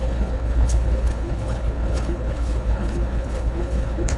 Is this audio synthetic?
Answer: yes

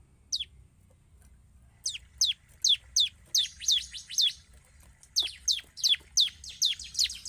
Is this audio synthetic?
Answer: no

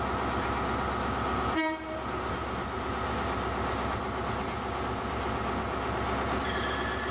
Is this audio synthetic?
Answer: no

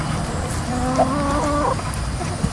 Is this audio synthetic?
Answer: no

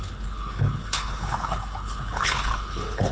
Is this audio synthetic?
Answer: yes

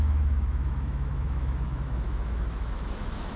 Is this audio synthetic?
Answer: yes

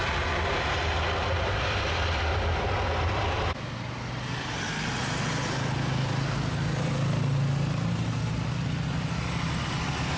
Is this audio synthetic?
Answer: no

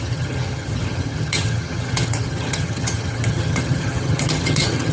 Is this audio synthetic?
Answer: yes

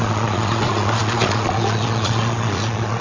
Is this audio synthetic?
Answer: yes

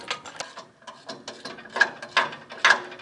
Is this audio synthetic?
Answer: no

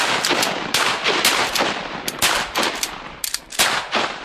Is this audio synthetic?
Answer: no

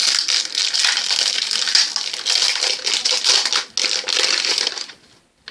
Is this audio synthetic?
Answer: no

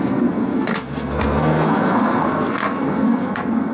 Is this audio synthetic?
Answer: yes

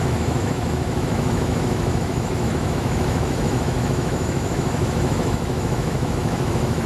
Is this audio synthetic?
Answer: yes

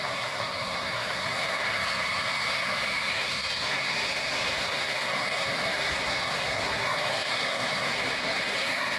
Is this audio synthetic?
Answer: yes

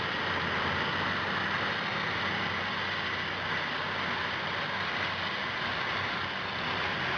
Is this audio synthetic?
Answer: no